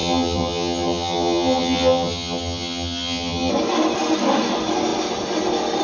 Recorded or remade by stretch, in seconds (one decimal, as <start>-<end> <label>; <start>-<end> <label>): 0.0-3.5 remade; 3.5-5.8 recorded